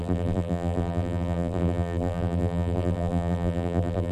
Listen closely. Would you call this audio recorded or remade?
remade